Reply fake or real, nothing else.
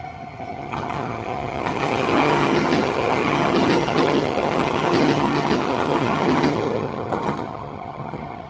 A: fake